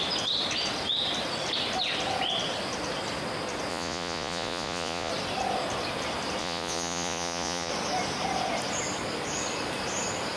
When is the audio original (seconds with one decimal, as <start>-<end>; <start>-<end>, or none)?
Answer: 0.0-3.7; 5.1-6.4; 7.7-10.4

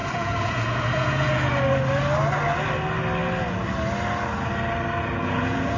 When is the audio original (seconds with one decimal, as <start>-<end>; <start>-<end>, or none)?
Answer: 1.5-5.0